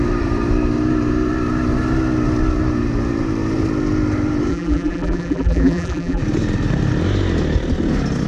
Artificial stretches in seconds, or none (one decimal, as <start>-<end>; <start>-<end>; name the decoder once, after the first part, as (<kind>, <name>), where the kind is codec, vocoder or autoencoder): 4.5-6.2 (vocoder, BigVGAN v2)